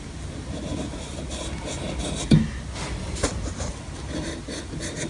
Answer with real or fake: real